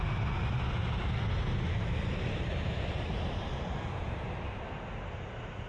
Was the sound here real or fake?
fake